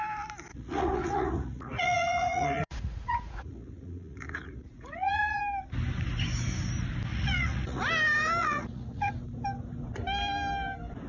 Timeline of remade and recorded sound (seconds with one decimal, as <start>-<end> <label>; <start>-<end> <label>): 0.0-0.5 recorded; 0.5-5.4 remade; 5.4-7.1 recorded; 7.1-7.9 remade; 7.9-8.4 recorded; 8.4-9.1 remade; 9.1-11.1 recorded